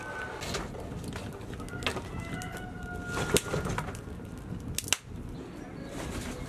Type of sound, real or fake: real